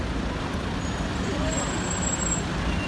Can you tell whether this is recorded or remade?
remade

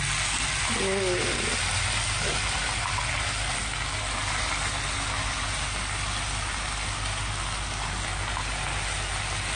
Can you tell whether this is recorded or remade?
recorded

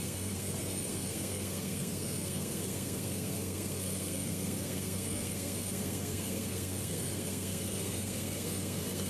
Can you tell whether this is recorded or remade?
remade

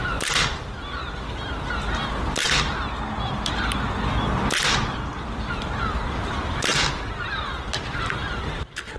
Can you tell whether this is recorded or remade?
recorded